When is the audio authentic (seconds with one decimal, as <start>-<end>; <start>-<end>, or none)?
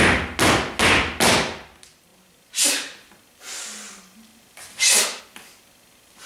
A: 0.0-2.1; 3.1-6.3